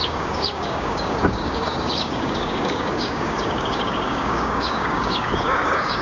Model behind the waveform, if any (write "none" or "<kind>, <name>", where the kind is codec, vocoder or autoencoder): codec, DAC